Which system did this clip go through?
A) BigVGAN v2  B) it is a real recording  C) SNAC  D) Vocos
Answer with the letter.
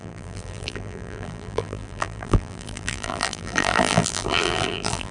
A